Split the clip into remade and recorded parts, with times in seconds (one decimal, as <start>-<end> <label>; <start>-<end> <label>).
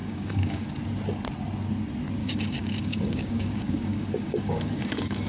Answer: 0.0-0.7 remade; 0.7-2.2 recorded; 2.2-5.3 remade